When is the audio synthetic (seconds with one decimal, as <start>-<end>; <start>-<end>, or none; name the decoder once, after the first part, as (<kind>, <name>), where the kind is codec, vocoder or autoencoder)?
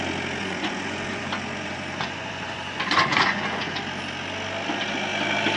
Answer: 0.4-3.8 (vocoder, Vocos)